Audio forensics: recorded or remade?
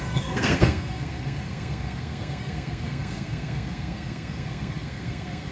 remade